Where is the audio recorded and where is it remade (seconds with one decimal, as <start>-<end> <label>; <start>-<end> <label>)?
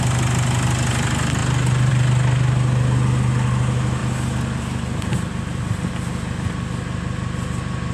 0.0-7.9 recorded